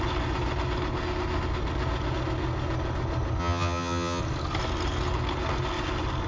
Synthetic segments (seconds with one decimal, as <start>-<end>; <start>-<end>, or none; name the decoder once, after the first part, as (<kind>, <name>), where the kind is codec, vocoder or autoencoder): 3.4-4.2 (vocoder, HiFi-GAN)